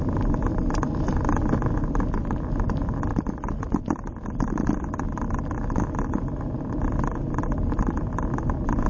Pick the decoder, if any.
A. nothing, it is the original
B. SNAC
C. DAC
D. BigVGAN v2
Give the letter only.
A